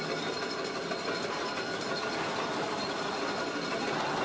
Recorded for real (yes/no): yes